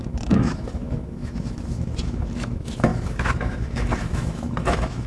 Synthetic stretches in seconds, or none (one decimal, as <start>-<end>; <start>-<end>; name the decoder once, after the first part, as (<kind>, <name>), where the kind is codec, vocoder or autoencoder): 0.0-5.1 (autoencoder, DAC-VAE)